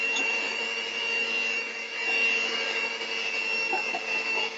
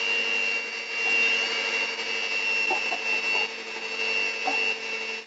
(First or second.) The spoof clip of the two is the first